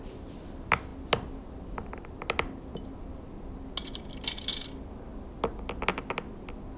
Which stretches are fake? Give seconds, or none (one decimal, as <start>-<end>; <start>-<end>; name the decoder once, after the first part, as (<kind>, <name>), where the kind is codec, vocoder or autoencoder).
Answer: none